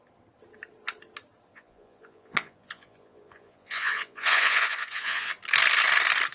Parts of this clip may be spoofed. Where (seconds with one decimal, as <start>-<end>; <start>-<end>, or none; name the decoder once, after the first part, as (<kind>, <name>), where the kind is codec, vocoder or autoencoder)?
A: 1.5-5.3 (vocoder, Vocos)